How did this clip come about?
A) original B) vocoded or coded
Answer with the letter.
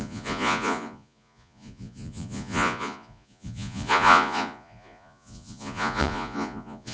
B